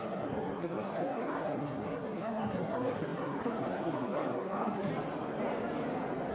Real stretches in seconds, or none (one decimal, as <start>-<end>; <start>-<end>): 4.9-6.3